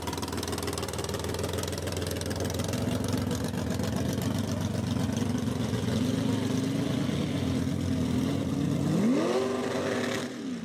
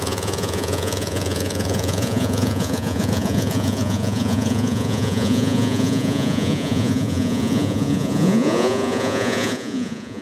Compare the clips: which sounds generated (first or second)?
second